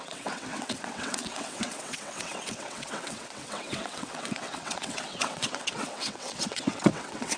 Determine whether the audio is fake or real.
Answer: fake